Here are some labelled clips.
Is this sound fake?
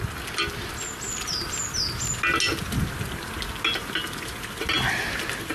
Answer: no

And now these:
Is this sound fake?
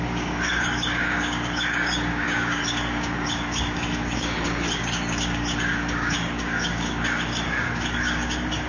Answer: yes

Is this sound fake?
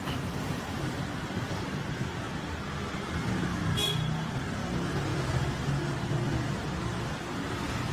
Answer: no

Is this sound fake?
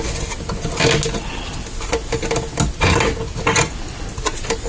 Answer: no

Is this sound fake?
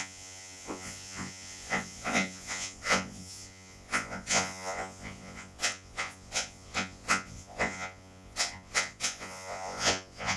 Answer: yes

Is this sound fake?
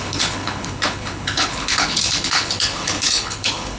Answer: yes